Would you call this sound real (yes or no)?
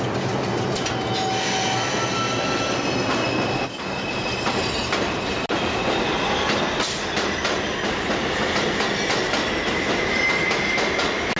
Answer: yes